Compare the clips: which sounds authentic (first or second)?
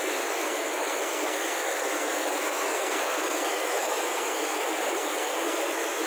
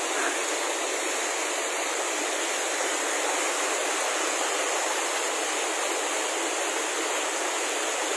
second